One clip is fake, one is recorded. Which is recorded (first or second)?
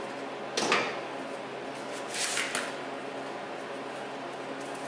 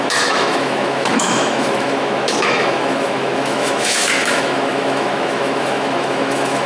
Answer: first